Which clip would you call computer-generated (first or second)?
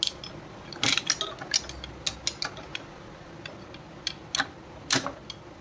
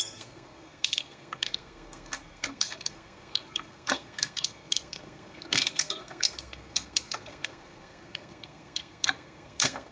second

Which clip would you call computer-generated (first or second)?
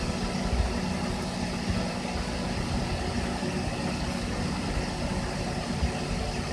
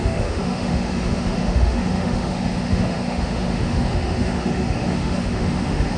second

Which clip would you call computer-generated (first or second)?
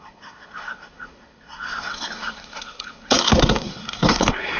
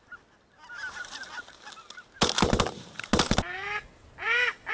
first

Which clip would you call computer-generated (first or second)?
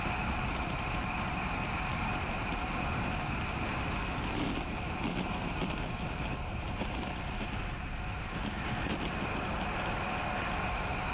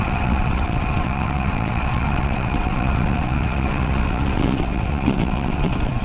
second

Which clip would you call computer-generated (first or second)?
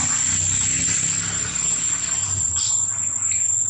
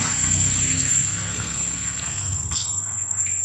second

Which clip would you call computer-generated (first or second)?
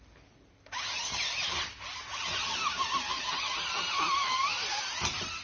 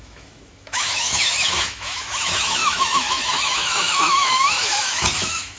second